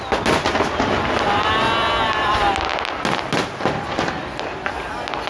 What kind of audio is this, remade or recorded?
recorded